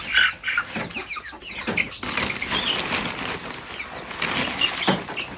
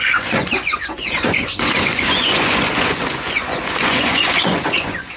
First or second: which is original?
first